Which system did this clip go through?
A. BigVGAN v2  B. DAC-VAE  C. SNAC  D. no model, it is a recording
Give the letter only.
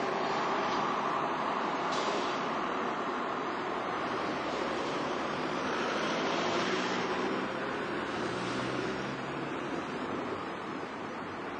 A